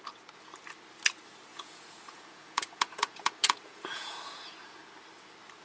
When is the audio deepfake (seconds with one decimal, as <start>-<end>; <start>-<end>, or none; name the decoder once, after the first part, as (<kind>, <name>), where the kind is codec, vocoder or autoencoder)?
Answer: 1.5-4.8 (vocoder, Vocos)